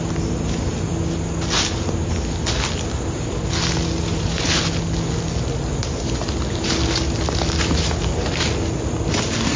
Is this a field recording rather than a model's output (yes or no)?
yes